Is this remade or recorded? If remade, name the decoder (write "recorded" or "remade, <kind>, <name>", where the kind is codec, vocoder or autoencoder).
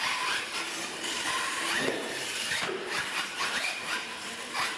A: remade, vocoder, BigVGAN v2